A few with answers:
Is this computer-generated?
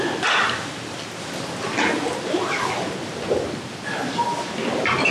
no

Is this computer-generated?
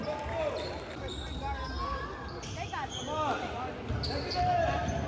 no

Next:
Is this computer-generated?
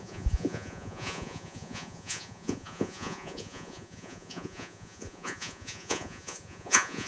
yes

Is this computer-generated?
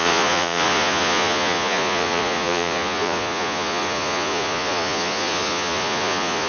yes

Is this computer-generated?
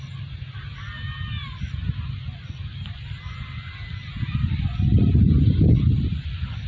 no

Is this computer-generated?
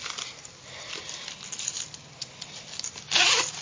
no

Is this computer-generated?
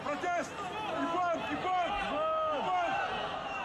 no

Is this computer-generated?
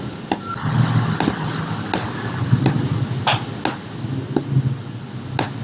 no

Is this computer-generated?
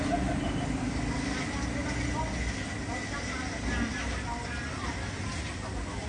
no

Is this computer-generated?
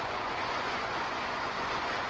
yes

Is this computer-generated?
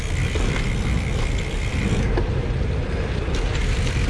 no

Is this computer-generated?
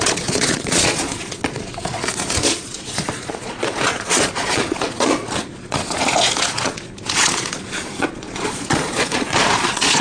yes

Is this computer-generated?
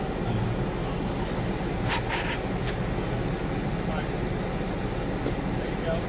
no